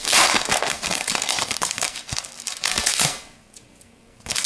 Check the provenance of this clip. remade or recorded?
remade